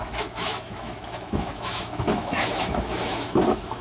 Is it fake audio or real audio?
fake